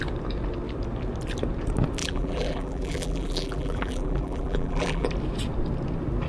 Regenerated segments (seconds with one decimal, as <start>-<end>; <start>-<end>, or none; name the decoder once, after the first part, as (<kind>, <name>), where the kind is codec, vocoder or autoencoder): 2.0-5.1 (vocoder, BigVGAN v2)